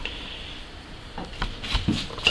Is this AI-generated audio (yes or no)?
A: no